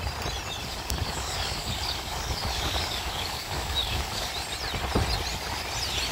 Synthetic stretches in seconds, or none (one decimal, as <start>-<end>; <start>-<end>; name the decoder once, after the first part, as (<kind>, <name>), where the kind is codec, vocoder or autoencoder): 0.6-4.3 (codec, DAC)